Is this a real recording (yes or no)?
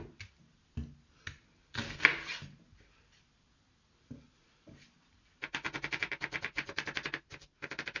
yes